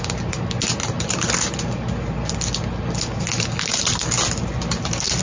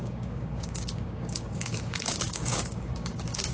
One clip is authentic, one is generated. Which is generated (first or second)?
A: second